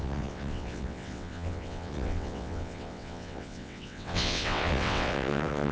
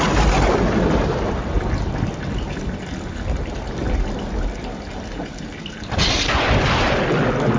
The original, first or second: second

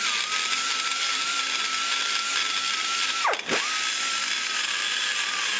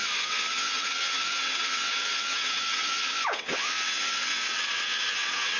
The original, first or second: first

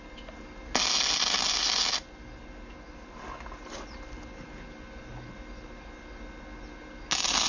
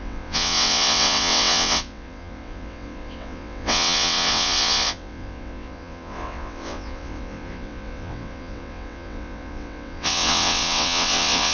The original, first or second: first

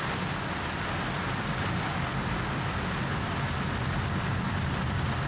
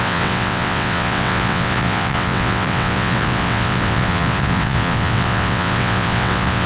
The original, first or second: first